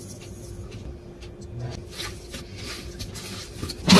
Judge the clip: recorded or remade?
recorded